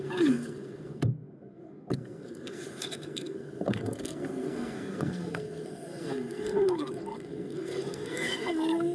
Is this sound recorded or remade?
remade